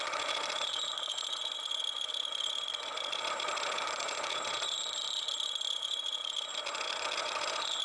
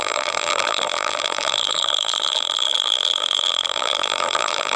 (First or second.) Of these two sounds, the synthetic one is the second